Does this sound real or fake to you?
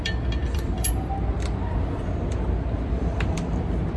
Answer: fake